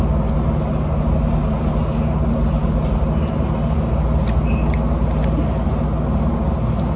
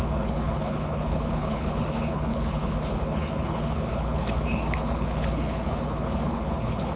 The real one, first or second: first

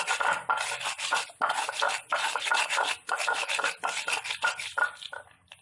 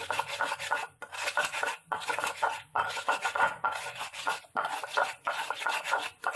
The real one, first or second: first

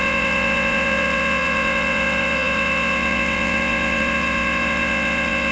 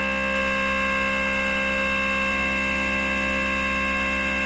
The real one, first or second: second